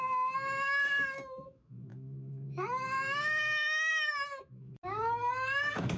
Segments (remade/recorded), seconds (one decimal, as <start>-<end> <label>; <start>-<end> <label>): 0.0-6.0 remade